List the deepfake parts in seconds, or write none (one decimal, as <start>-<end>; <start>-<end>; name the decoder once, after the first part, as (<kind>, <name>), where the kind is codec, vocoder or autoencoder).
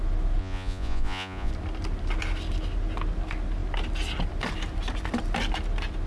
0.4-1.5 (vocoder, Vocos)